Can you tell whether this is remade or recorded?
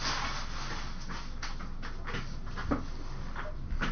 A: recorded